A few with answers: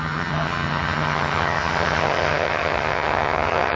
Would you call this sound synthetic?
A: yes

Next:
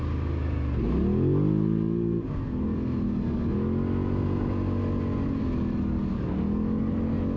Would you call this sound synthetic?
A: no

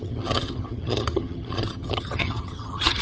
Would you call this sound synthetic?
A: yes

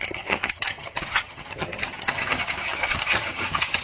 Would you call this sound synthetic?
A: yes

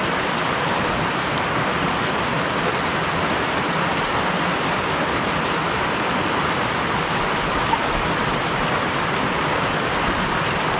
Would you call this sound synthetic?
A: no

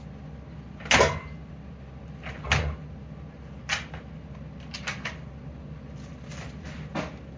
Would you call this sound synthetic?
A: no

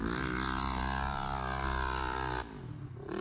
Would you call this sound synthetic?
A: no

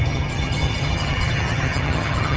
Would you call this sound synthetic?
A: yes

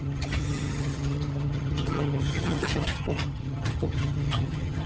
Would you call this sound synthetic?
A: yes